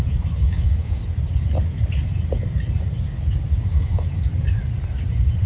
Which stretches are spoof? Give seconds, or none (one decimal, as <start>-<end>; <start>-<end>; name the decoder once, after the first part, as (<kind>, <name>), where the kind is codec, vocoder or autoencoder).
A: 0.4-1.0 (autoencoder, DAC-VAE); 3.7-4.2